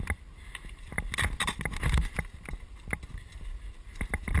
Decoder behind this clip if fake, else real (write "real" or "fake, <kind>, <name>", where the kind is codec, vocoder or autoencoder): real